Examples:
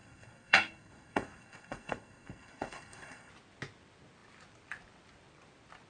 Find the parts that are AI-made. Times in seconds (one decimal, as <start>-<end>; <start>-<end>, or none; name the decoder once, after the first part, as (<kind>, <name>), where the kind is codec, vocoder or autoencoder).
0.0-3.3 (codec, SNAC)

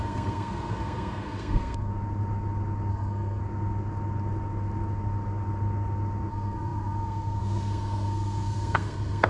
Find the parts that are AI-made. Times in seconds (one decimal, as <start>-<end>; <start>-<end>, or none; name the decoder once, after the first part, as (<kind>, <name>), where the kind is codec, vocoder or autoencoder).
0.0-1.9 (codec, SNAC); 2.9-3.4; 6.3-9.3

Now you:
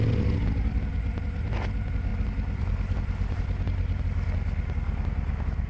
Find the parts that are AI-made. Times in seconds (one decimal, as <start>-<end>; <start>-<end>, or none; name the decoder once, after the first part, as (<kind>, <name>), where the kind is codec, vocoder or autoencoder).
none